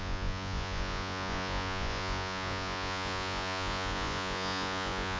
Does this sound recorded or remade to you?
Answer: remade